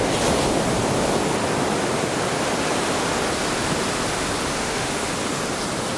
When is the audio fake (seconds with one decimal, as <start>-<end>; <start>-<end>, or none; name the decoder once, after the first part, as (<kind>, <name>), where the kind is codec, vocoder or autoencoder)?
4.5-5.1 (autoencoder, DAC-VAE)